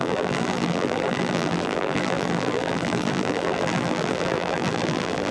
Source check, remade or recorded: remade